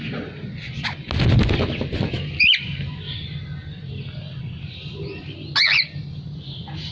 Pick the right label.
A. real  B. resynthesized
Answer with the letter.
A